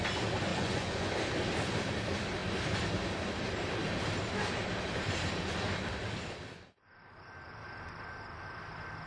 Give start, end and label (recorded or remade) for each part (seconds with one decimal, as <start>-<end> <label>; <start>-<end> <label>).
0.0-0.5 recorded; 0.5-1.1 remade; 1.1-9.1 recorded